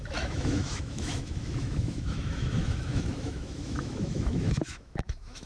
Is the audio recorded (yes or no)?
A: no